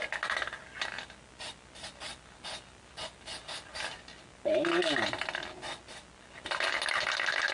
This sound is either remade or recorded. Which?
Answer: recorded